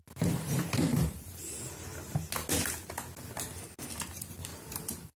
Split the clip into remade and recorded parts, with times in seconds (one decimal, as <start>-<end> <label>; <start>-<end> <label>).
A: 0.0-0.9 recorded; 0.9-1.4 remade; 1.4-4.5 recorded; 4.5-5.2 remade